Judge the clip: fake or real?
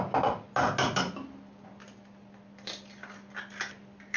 real